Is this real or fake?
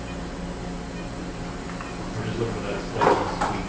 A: real